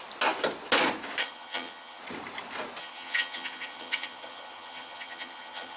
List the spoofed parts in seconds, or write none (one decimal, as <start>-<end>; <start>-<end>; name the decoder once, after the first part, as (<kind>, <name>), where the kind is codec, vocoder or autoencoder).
1.2-2.0 (vocoder, HiFi-GAN); 2.8-5.8